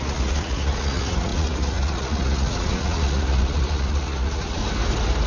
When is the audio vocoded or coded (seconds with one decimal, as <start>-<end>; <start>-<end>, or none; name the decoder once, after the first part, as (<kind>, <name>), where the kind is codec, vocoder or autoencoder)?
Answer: 0.0-4.6 (vocoder, Vocos)